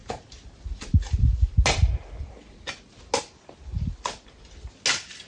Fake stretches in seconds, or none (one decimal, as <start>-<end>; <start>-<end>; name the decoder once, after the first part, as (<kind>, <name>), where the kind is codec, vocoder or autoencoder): none